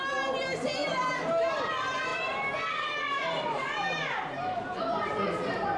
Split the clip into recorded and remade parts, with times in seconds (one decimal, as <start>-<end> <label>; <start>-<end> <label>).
0.0-0.8 recorded; 0.8-1.7 remade; 1.7-2.1 recorded; 2.1-5.8 remade